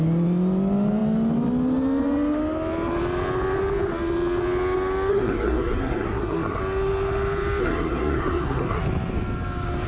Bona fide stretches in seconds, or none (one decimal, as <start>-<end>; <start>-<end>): 0.0-5.1; 6.6-7.6; 8.8-9.9